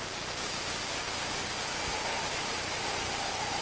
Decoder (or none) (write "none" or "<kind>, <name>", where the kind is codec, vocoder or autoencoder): none